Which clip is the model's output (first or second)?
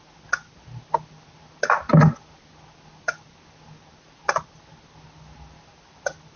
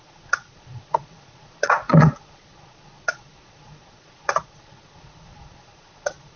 second